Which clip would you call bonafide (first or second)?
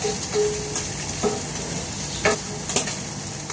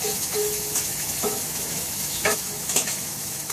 first